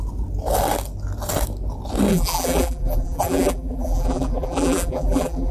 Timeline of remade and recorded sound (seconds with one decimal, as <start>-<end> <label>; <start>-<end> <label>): 0.0-2.1 recorded; 2.1-5.5 remade